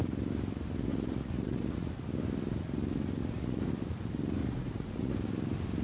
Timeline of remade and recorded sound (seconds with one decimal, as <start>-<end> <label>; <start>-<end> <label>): 0.0-0.9 recorded; 0.9-1.9 remade; 1.9-3.2 recorded; 3.2-3.7 remade; 3.7-4.4 recorded; 4.4-5.1 remade; 5.1-5.8 recorded